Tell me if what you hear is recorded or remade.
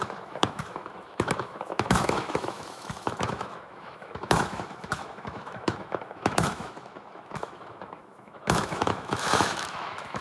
remade